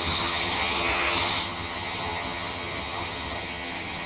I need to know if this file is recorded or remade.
remade